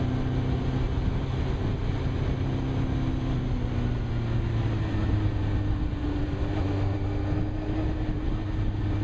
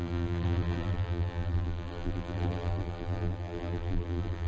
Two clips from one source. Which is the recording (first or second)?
first